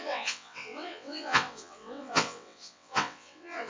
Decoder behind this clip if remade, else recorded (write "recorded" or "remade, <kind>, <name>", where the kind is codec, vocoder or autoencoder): remade, vocoder, WaveNeXt